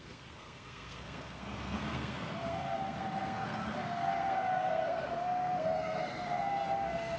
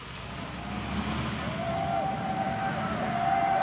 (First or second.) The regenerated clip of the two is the first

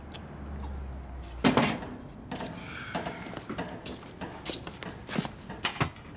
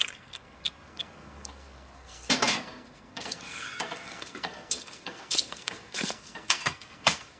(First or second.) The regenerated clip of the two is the second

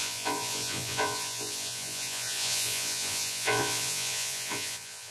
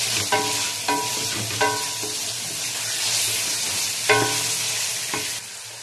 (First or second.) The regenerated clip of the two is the first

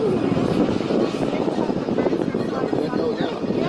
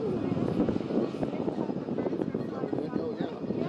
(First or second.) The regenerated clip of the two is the first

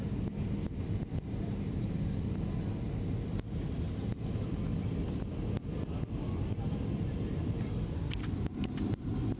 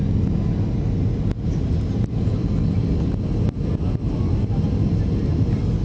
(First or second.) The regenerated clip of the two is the first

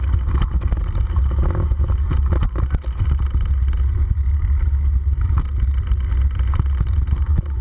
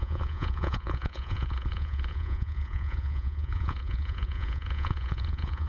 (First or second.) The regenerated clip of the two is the second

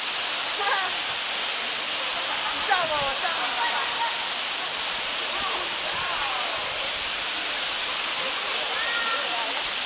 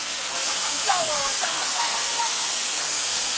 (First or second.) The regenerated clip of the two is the second